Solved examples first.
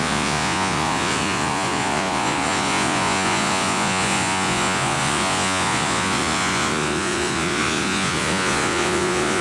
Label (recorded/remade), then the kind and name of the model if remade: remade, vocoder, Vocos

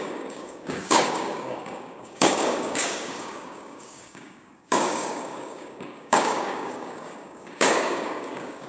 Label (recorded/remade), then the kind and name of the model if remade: remade, codec, DAC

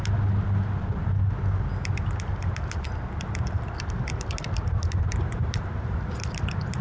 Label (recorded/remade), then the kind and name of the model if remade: recorded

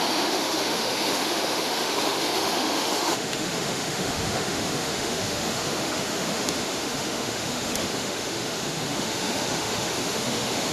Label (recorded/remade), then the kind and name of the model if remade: remade, autoencoder, DAC-VAE